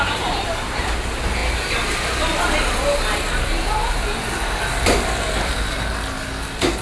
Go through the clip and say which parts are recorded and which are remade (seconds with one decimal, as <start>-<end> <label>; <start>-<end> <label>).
0.0-6.8 recorded